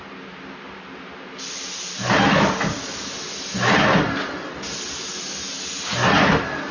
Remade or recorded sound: recorded